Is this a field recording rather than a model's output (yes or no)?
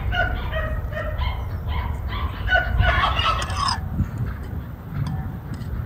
yes